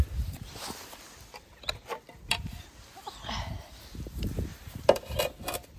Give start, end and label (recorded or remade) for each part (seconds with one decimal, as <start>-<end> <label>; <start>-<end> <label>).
0.0-4.5 recorded; 4.5-5.2 remade; 5.2-5.8 recorded